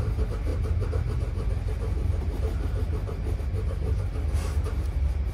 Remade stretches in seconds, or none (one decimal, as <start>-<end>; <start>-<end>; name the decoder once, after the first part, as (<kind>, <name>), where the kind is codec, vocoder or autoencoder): 0.5-3.4 (vocoder, BigVGAN v2)